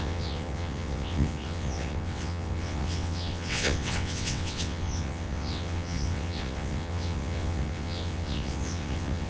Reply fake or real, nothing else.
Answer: fake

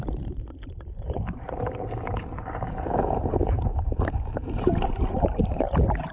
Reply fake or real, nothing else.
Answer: fake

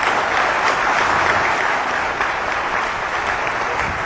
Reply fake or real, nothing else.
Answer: real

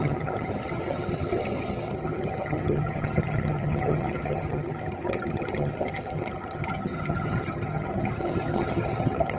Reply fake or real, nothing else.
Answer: fake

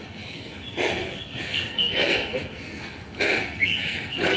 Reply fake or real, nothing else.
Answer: fake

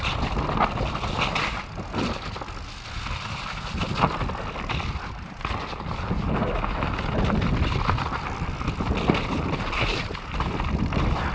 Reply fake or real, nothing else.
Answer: real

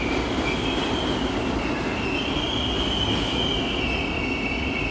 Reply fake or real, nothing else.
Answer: real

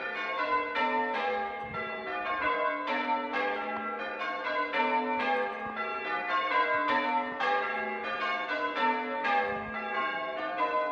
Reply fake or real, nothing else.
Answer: real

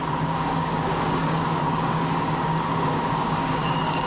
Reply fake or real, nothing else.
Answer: fake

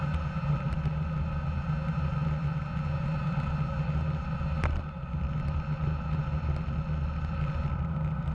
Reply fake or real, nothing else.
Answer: real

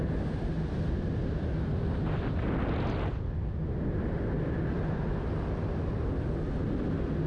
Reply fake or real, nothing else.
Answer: real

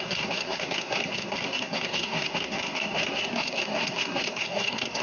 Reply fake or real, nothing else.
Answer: fake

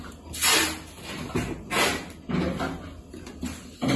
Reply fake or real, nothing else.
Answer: real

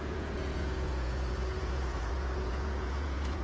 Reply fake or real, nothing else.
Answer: fake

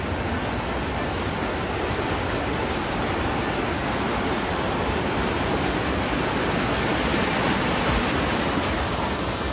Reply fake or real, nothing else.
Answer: real